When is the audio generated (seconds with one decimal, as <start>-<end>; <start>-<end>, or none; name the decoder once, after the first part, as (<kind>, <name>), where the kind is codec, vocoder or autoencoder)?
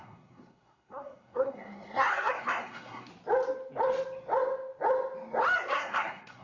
0.0-3.1 (codec, SNAC); 5.7-6.4